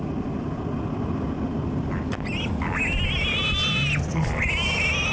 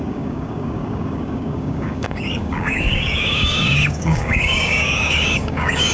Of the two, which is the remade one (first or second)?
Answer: second